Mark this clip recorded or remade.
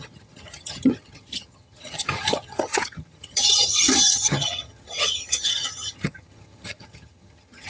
remade